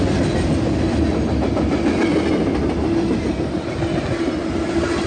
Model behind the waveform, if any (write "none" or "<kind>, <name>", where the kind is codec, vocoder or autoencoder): none